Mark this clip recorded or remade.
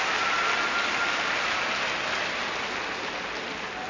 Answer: recorded